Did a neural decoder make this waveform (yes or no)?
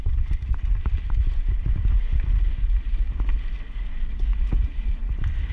no